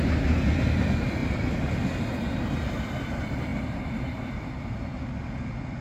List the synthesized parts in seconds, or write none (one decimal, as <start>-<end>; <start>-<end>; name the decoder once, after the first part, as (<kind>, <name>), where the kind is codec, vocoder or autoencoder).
3.5-4.5 (vocoder, BigVGAN v2)